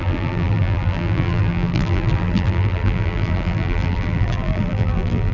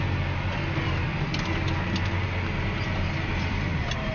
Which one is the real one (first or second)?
second